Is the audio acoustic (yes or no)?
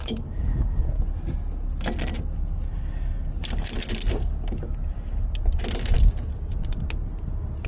yes